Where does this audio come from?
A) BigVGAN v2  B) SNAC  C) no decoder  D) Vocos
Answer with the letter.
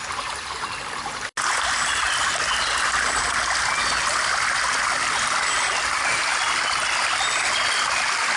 C